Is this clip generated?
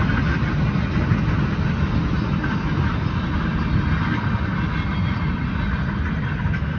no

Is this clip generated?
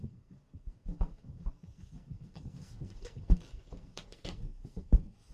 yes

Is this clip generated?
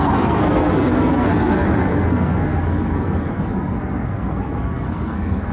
yes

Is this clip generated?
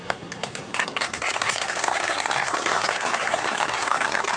yes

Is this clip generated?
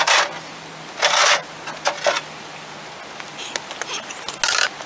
no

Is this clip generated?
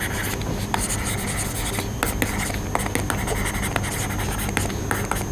no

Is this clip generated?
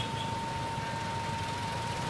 no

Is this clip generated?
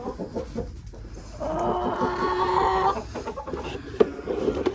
no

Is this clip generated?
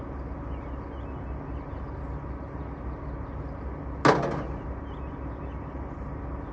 no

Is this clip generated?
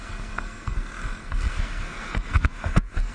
yes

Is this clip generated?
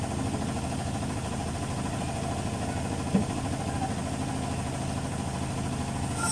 no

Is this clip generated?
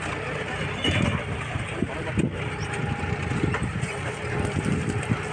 no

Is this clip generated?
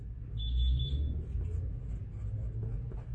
no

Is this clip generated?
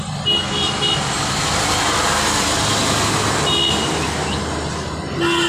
no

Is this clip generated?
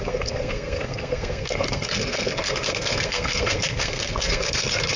yes